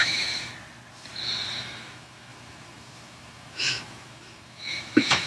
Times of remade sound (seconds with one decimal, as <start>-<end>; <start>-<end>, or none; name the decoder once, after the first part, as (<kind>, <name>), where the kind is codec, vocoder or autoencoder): 0.0-0.5 (autoencoder, DAC-VAE); 1.5-5.3